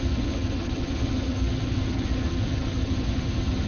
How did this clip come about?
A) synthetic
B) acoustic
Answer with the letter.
A